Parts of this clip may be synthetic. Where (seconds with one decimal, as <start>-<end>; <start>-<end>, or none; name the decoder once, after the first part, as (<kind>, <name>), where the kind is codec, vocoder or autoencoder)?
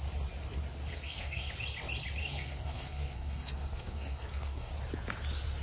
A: 0.9-1.5 (codec, SNAC); 2.2-4.7